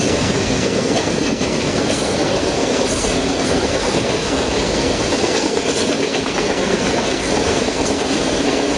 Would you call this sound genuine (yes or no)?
no